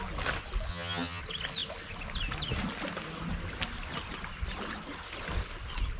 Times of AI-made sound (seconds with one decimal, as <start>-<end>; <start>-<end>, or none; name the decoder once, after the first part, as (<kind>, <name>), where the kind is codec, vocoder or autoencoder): 0.7-1.2 (vocoder, HiFi-GAN)